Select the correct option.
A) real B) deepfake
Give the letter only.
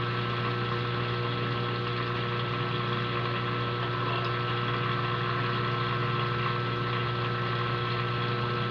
A